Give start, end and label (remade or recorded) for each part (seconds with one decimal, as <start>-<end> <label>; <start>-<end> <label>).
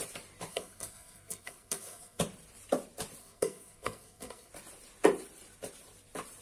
0.0-0.5 recorded; 0.5-2.2 remade; 2.2-3.2 recorded; 3.2-4.5 remade; 4.5-6.4 recorded